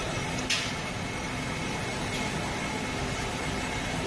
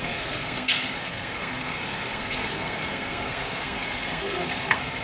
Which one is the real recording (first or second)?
first